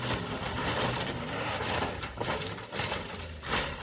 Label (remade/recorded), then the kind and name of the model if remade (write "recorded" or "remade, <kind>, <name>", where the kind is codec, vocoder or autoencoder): recorded